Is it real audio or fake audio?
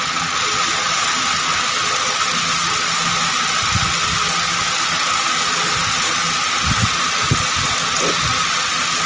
real